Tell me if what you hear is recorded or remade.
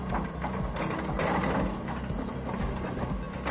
recorded